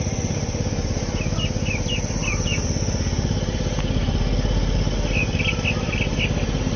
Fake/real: real